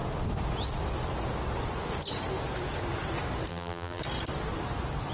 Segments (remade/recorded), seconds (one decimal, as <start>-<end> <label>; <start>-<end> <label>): 0.0-3.5 recorded; 3.5-4.0 remade; 4.0-5.1 recorded